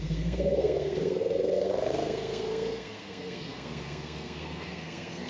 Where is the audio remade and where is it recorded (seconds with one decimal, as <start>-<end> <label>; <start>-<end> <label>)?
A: 0.0-5.3 remade